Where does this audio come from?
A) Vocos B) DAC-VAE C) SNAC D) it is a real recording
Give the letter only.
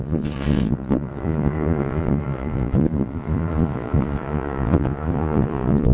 A